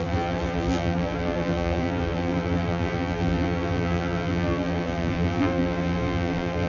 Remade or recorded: remade